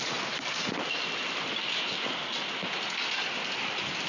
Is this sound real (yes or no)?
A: yes